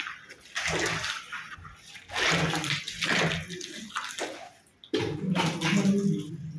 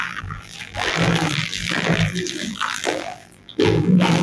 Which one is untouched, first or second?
first